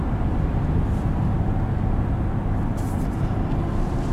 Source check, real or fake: real